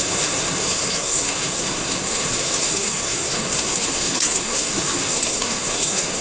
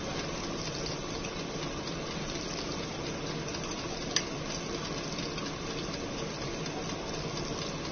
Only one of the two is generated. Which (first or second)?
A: first